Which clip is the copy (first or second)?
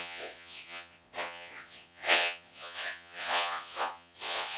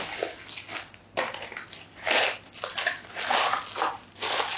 first